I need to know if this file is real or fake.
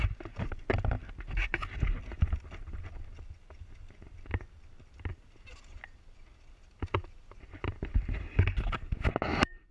real